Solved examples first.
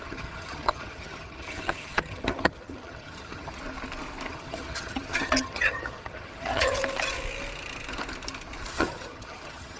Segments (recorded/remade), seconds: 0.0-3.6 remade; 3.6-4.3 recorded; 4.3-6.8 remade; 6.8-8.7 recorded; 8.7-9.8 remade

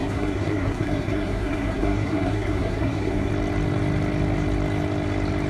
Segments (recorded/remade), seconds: 0.0-3.3 remade; 3.3-5.5 recorded

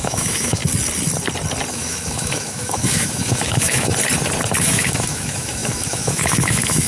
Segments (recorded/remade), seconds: 0.0-0.6 remade; 0.6-1.7 recorded; 1.7-3.9 remade; 3.9-4.6 recorded; 4.6-6.9 remade

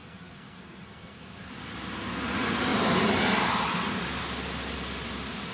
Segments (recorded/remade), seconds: 0.0-1.5 remade; 1.5-5.5 recorded